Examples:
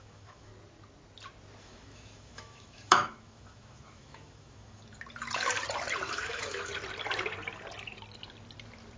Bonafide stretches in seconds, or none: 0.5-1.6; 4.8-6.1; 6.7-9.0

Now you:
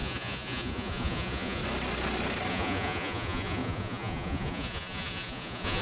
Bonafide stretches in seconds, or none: 1.6-2.5